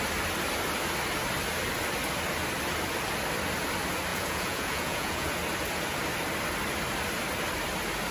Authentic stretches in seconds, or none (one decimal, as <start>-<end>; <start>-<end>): 0.0-4.1; 5.3-8.1